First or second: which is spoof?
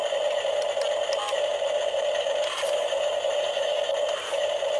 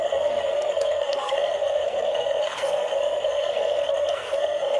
second